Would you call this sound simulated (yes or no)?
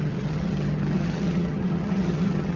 yes